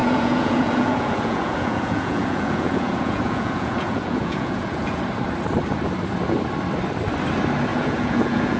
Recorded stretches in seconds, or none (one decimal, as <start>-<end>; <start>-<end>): 5.0-7.7